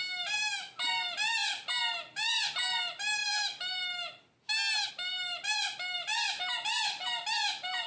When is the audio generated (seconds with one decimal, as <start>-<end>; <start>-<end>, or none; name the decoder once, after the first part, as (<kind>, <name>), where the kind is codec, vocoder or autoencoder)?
none